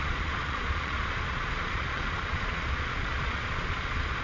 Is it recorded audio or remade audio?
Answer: remade